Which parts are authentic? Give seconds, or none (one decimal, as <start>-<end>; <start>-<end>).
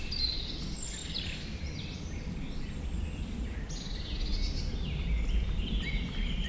0.0-6.5